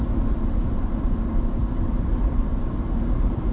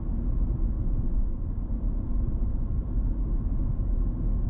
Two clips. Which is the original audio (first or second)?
second